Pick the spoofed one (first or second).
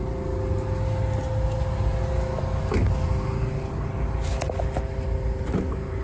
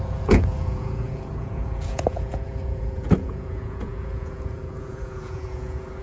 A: second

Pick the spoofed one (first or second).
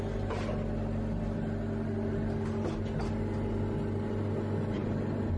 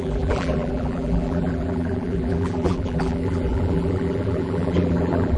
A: second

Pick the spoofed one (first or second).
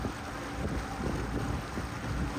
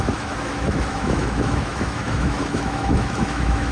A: second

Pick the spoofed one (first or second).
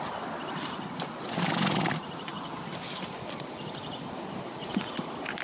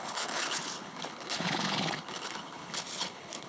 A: second